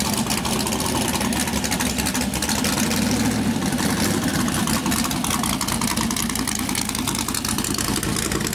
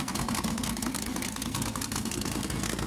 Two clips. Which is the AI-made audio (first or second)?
second